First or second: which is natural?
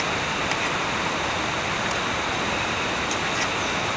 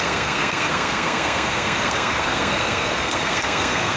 first